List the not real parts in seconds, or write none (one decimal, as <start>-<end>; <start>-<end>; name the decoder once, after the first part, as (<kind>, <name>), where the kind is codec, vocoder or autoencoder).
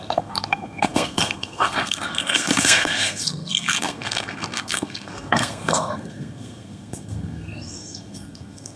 0.0-8.8 (codec, SNAC)